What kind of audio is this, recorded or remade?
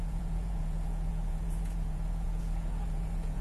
remade